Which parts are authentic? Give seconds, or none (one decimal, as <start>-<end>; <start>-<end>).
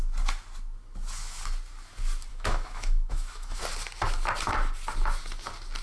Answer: 0.0-2.3; 3.6-5.8